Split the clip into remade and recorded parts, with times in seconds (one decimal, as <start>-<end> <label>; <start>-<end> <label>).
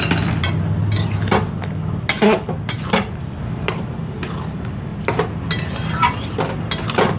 0.0-7.2 recorded